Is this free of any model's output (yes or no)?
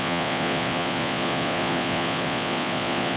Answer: no